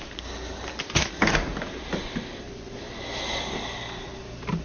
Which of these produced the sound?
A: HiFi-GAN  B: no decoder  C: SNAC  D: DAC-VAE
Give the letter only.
B